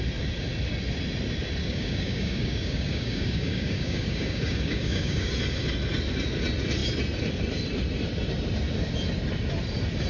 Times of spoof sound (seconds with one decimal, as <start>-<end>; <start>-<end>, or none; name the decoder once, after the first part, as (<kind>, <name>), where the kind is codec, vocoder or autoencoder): 1.6-5.3 (codec, DAC)